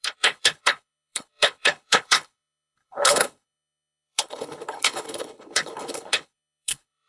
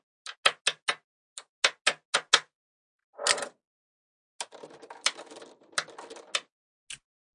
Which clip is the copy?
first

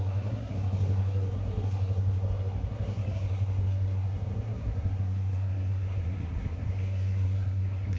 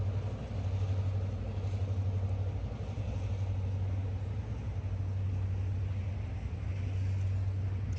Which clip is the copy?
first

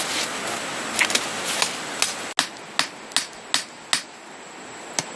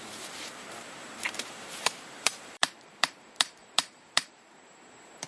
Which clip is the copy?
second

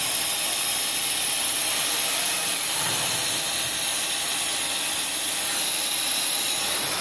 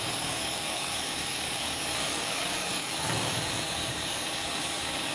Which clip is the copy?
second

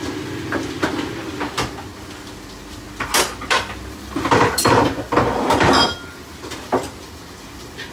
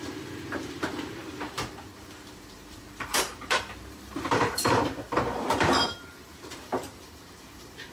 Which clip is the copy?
second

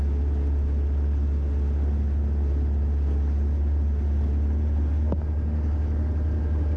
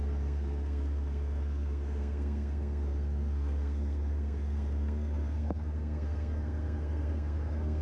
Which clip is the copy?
second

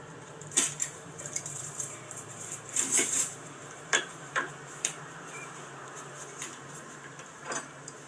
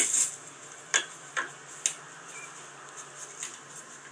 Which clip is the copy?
first